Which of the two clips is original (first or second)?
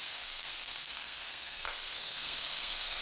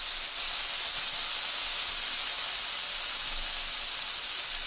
second